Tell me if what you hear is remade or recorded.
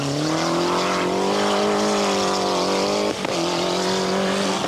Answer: recorded